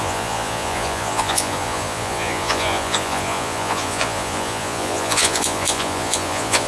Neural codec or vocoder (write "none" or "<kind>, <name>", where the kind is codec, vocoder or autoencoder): vocoder, Vocos